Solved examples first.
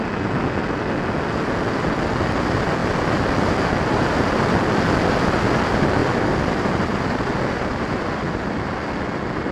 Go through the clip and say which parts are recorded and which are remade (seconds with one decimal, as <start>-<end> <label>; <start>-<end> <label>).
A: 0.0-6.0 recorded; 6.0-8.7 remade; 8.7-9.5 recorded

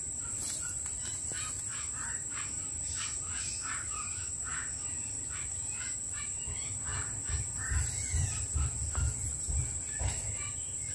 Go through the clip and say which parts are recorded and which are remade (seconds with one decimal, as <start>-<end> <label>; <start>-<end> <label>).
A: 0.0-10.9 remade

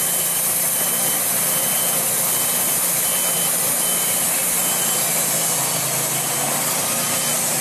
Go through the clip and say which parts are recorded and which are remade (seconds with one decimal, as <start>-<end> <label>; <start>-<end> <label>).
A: 0.0-7.6 recorded